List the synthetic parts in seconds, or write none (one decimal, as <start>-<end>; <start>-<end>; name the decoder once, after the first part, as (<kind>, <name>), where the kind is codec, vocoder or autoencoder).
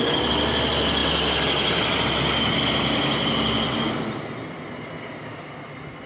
none